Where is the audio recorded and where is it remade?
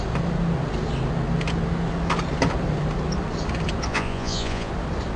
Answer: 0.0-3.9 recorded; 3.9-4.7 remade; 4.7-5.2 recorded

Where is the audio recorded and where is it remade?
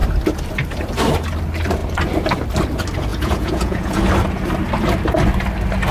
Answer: 0.0-3.1 recorded; 3.1-4.0 remade; 4.0-5.9 recorded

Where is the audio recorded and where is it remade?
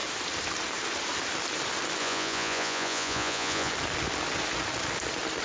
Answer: 0.0-2.0 recorded; 2.0-3.7 remade; 3.7-5.4 recorded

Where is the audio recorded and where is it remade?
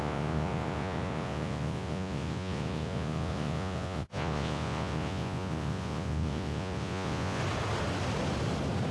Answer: 0.0-7.4 remade; 7.4-8.9 recorded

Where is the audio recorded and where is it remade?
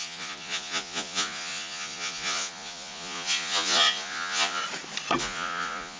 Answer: 0.0-4.6 remade; 4.6-5.2 recorded; 5.2-6.0 remade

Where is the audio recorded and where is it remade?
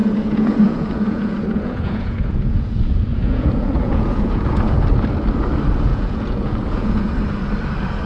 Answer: 0.0-4.6 remade; 4.6-5.9 recorded; 5.9-7.1 remade; 7.1-8.1 recorded